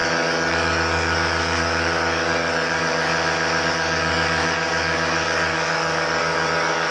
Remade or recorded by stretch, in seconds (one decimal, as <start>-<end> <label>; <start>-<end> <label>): 0.0-3.1 remade; 3.1-3.7 recorded; 3.7-6.9 remade